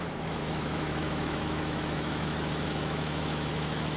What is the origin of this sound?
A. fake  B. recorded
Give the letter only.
A